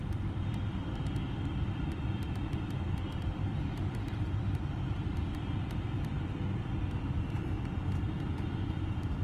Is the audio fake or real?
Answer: fake